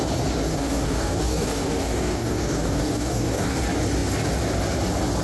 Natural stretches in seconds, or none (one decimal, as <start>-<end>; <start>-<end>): 0.0-0.5; 3.6-5.2